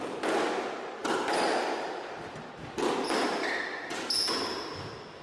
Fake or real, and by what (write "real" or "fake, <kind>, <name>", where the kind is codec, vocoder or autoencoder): real